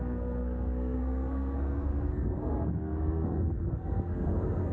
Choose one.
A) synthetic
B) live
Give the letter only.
A